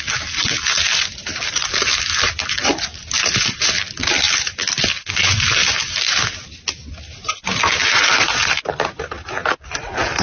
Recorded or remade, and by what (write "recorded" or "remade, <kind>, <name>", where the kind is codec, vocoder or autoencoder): recorded